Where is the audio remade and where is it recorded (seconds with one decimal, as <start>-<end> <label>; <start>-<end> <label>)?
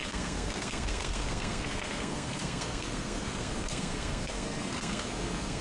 0.0-5.6 remade